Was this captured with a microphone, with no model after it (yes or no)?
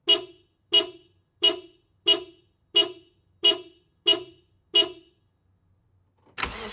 yes